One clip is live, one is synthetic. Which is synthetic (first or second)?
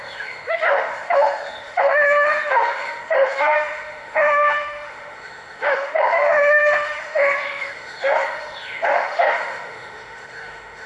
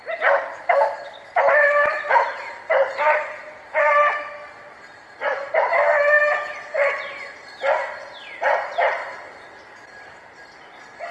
first